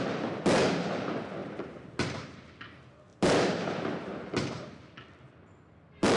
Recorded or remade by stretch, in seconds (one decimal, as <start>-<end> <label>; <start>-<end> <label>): 0.0-1.4 recorded; 1.4-2.5 remade; 2.5-3.1 recorded; 3.1-4.7 remade; 4.7-6.2 recorded